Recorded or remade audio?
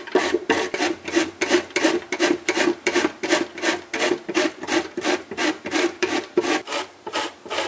remade